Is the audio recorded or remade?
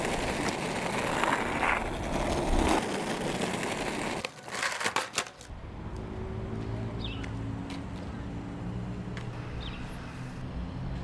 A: recorded